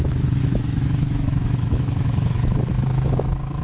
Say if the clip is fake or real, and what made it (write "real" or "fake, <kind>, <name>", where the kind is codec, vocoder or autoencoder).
fake, autoencoder, DAC-VAE